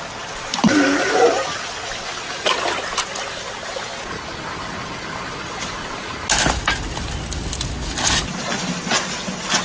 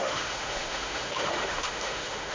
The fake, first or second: second